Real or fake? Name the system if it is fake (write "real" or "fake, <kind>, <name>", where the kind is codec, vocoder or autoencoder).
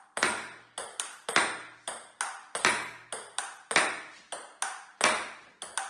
real